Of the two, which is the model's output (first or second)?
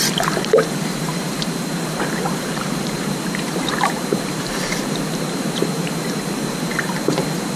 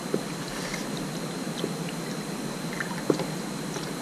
first